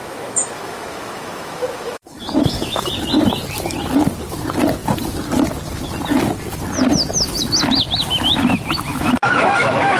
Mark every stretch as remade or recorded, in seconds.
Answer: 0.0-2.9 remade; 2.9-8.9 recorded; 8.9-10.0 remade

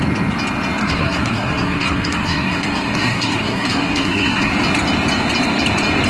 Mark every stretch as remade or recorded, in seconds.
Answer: 0.0-0.8 recorded; 0.8-4.5 remade; 4.5-6.1 recorded

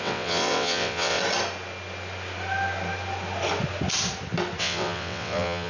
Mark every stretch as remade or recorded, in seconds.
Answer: 0.0-1.2 remade; 1.2-4.6 recorded; 4.6-5.7 remade

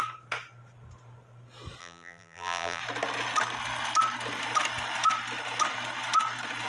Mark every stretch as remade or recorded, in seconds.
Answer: 0.0-1.8 recorded; 1.8-2.8 remade; 2.8-6.7 recorded

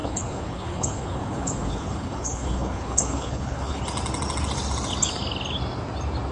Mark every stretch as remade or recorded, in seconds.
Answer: 0.0-3.8 remade; 3.8-6.3 recorded

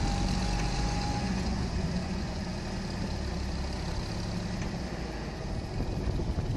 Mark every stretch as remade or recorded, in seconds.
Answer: 0.0-0.4 recorded; 0.4-2.6 remade; 2.6-6.6 recorded